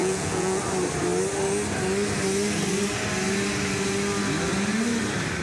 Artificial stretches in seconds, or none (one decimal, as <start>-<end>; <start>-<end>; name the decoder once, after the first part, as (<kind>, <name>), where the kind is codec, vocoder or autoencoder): 0.0-0.6 (vocoder, Vocos)